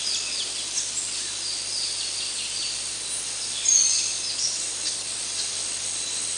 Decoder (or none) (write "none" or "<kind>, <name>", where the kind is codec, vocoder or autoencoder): none